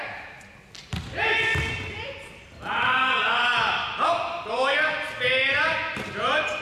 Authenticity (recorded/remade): recorded